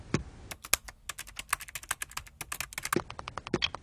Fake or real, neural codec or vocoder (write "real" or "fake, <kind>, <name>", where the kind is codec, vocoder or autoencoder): real